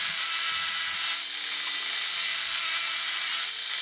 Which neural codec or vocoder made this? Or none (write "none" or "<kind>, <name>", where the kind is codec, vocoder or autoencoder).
none